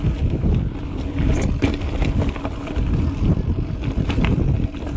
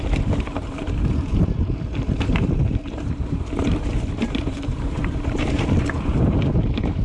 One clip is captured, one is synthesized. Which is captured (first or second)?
first